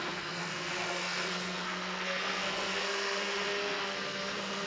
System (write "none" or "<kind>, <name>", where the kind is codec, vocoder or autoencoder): codec, SNAC